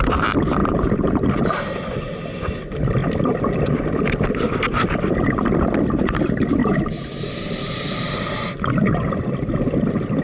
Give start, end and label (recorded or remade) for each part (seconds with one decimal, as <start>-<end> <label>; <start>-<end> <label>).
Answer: 0.0-0.6 recorded; 0.6-1.3 remade; 1.3-6.6 recorded; 6.6-8.3 remade; 8.3-10.2 recorded